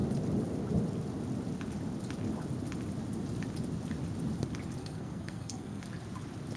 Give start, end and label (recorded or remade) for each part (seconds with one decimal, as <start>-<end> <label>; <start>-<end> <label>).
0.0-4.8 recorded; 4.8-5.8 remade; 5.8-6.6 recorded